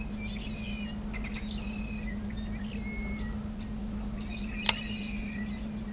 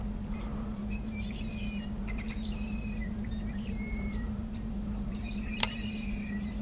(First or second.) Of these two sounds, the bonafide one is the first